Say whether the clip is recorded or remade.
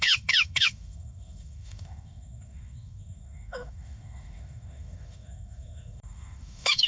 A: remade